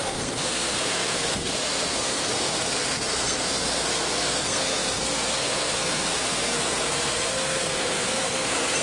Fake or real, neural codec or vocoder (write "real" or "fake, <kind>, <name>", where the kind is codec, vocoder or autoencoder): fake, codec, SNAC